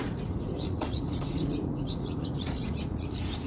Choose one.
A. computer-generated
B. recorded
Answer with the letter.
A